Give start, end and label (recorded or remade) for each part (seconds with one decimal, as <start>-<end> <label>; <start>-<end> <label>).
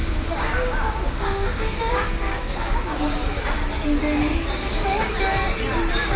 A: 0.0-3.4 remade; 3.4-4.3 recorded; 4.3-5.2 remade; 5.2-6.2 recorded